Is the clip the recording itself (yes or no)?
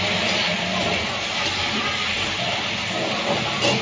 yes